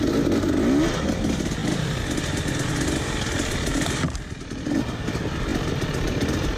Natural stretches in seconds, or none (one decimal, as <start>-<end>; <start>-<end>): 0.0-6.6